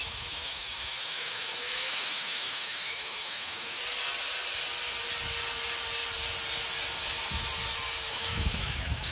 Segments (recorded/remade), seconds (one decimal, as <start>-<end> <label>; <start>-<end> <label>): 0.0-3.8 remade; 3.8-8.1 recorded; 8.1-9.1 remade